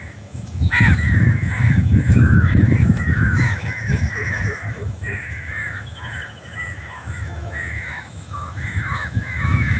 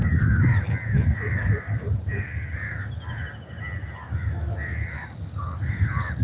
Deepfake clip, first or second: first